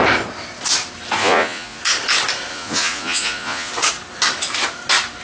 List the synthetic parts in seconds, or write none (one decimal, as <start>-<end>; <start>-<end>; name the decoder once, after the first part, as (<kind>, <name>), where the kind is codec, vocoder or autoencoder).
1.2-1.8 (vocoder, Vocos); 2.5-3.7